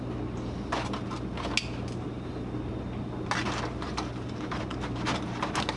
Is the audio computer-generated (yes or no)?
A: no